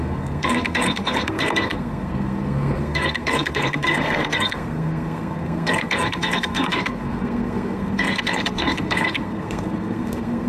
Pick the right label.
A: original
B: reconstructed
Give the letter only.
B